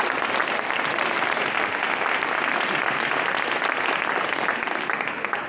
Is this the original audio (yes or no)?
yes